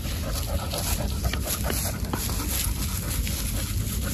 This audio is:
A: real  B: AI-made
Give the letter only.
A